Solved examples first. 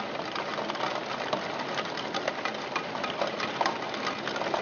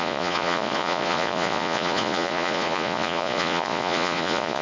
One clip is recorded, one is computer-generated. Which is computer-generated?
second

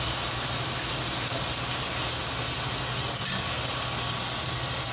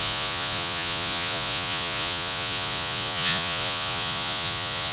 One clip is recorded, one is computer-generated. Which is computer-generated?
second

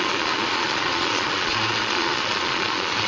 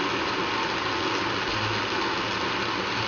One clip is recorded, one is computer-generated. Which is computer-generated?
first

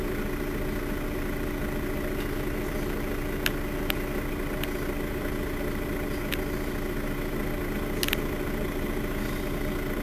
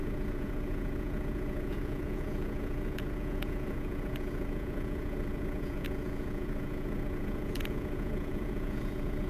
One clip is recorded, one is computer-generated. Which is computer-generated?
second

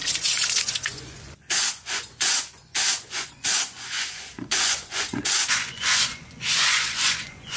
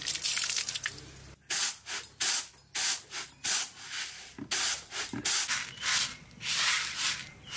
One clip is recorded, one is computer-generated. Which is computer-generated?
first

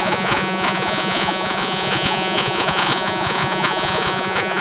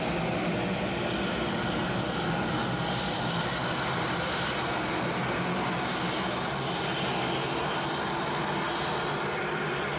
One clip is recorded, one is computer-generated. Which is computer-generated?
first